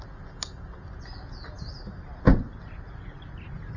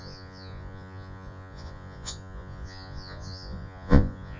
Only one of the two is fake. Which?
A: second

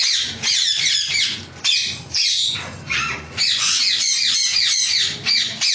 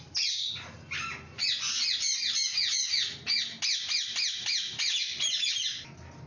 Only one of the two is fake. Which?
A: first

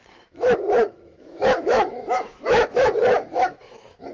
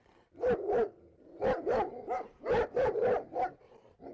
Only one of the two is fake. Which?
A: first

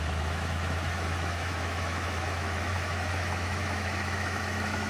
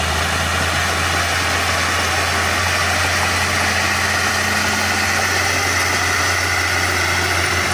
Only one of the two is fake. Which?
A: first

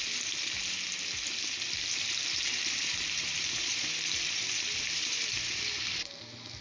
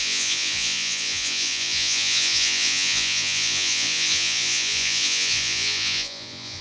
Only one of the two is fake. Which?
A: second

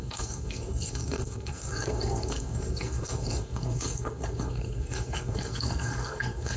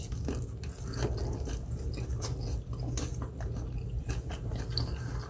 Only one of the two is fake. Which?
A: first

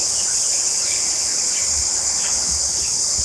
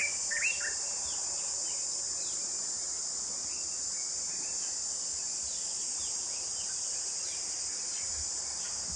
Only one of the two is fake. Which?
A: first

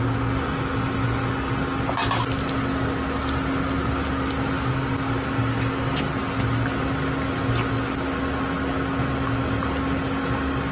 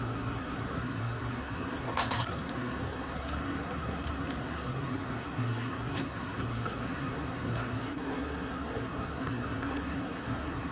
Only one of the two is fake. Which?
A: second